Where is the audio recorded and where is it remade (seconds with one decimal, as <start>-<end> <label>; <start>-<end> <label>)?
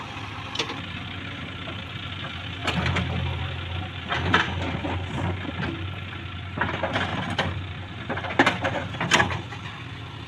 0.0-7.1 recorded; 7.1-8.1 remade; 8.1-10.3 recorded